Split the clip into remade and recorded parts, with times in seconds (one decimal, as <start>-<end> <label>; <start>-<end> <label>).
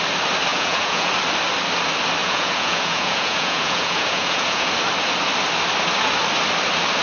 0.0-0.5 recorded; 0.5-1.1 remade; 1.1-2.2 recorded; 2.2-4.7 remade; 4.7-7.0 recorded